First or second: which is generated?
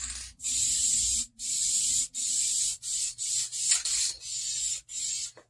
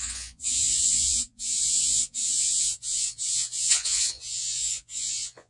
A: second